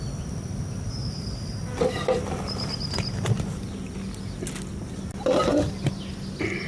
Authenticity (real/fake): real